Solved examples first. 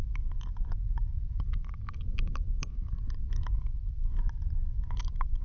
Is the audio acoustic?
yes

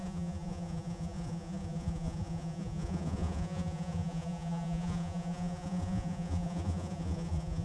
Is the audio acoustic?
no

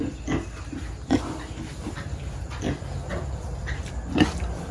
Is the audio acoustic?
yes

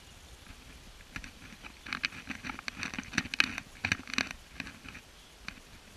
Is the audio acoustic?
yes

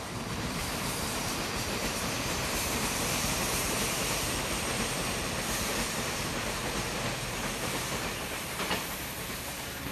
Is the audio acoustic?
no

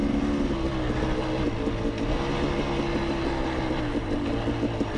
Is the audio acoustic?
yes